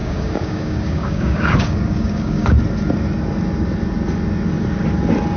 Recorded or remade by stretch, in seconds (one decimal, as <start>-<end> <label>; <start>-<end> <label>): 0.0-2.6 remade; 2.6-5.4 recorded